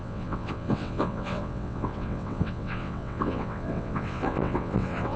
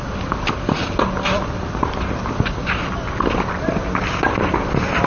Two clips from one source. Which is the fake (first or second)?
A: first